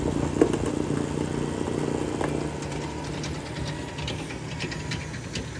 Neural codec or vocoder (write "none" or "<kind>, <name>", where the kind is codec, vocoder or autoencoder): none